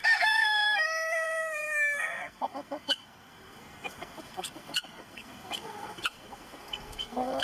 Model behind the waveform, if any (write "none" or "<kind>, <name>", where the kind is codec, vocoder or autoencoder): codec, SNAC